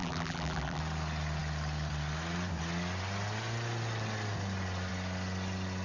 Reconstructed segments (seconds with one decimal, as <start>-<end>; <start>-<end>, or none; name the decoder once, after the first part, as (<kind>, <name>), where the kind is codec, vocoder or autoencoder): 0.0-0.8 (vocoder, BigVGAN v2)